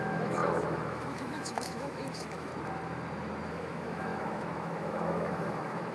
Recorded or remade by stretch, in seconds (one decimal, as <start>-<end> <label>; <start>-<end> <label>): 0.0-2.5 remade; 2.5-3.5 recorded; 3.5-5.9 remade